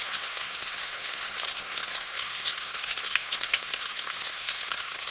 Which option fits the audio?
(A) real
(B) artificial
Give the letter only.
B